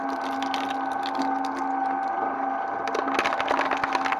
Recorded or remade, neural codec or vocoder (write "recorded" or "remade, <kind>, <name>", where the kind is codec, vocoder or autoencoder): recorded